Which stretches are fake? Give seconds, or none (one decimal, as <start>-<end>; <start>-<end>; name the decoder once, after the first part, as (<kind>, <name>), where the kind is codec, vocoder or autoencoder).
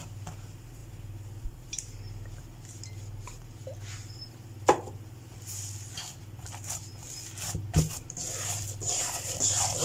0.0-6.9 (vocoder, BigVGAN v2); 8.6-9.8